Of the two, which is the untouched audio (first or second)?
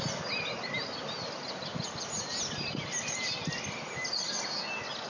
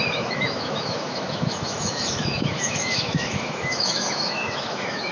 first